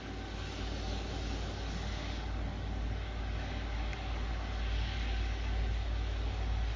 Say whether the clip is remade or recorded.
remade